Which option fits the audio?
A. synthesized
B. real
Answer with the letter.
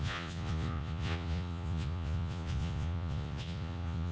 A